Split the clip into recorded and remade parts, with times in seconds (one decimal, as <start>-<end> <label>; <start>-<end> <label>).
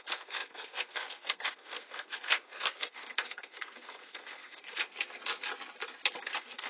0.0-4.9 remade; 4.9-6.2 recorded; 6.2-6.7 remade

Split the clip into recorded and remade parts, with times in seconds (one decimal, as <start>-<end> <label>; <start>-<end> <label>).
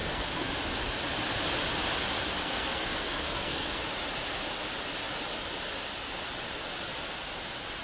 0.0-0.5 remade; 0.5-2.4 recorded; 2.4-3.8 remade; 3.8-7.8 recorded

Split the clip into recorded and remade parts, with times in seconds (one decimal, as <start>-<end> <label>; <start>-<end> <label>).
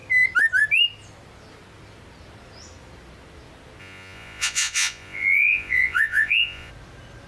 0.0-3.8 recorded; 3.8-6.7 remade; 6.7-7.3 recorded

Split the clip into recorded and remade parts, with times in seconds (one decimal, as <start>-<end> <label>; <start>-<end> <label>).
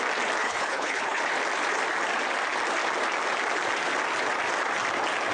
0.0-0.4 recorded; 0.4-1.2 remade; 1.2-5.3 recorded